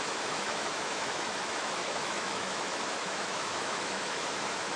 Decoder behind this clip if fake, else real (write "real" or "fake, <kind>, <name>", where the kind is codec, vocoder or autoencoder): fake, autoencoder, DAC-VAE